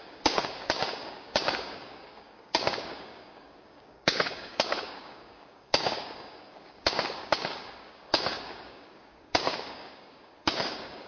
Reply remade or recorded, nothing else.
remade